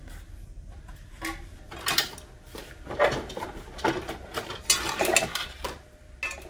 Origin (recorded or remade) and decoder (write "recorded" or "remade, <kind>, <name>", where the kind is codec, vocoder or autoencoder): recorded